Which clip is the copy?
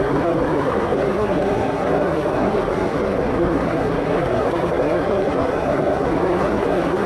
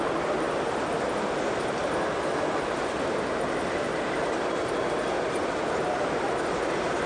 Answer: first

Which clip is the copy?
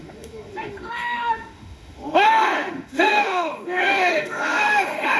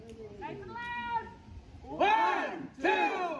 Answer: first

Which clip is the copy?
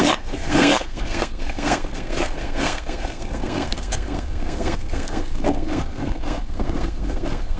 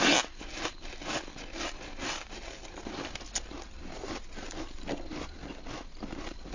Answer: first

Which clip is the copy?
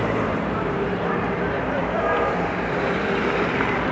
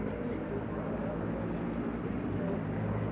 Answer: first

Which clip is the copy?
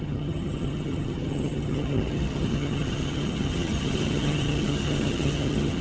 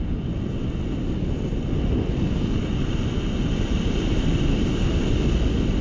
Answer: first